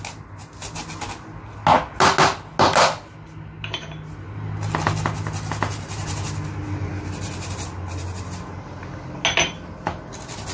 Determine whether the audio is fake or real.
real